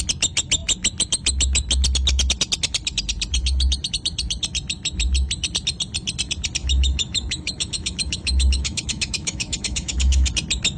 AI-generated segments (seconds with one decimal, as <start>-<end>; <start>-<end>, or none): 6.6-10.3